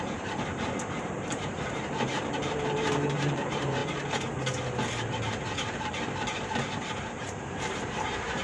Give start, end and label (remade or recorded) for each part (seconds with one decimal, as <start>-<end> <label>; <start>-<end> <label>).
0.0-3.8 remade; 3.8-5.1 recorded; 5.1-8.4 remade

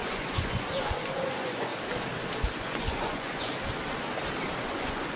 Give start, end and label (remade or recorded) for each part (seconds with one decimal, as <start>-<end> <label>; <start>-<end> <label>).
0.0-1.7 remade; 1.7-2.6 recorded; 2.6-3.5 remade; 3.5-4.7 recorded; 4.7-5.2 remade